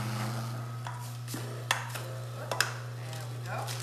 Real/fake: real